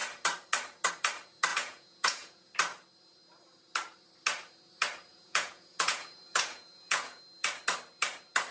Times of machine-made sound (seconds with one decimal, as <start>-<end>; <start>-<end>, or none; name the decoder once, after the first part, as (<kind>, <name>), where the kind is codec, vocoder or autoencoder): 1.5-2.5 (vocoder, Vocos); 5.1-7.2